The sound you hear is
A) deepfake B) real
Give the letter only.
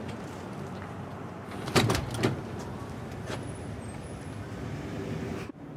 B